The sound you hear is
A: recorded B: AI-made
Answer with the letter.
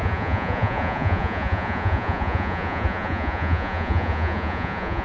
B